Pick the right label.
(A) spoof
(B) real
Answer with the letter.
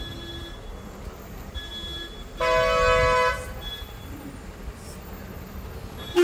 B